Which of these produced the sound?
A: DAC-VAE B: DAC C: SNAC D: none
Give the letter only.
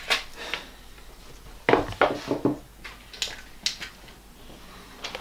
D